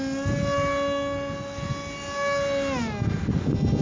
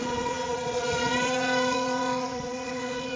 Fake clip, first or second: second